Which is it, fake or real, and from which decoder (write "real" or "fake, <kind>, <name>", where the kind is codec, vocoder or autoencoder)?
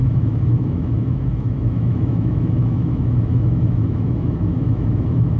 fake, autoencoder, DAC-VAE